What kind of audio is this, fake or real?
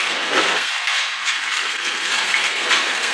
fake